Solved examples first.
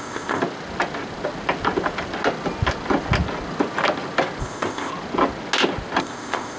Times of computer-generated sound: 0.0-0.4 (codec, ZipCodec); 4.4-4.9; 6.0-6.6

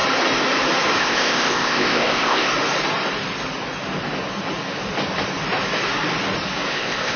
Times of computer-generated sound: 1.0-2.5 (codec, ZipCodec); 6.7-7.2

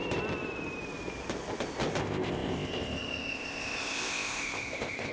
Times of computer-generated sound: 2.0-5.1 (codec, ZipCodec)

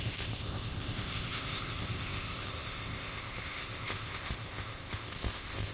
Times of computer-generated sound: 0.0-5.7 (codec, ZipCodec)

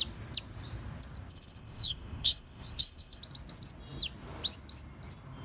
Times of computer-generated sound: 1.3-3.2 (codec, ZipCodec)

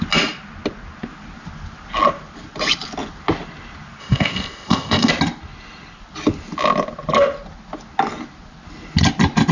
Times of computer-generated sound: 4.0-5.1 (codec, ZipCodec)